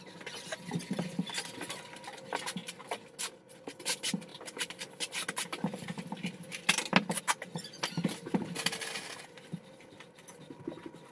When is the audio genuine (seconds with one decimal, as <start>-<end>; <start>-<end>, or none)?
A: 0.0-11.1